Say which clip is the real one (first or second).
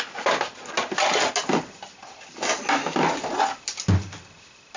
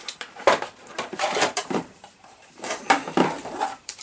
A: first